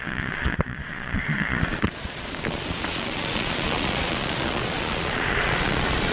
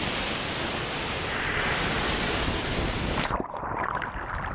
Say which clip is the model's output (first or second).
first